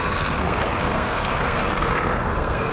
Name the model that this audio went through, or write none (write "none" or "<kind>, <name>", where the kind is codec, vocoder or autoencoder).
codec, SNAC